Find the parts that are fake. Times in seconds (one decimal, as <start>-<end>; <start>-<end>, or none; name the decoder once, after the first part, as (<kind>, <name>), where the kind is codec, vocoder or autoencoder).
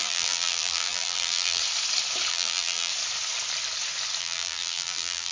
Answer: 0.0-1.6 (vocoder, BigVGAN v2); 2.3-2.9; 4.2-5.3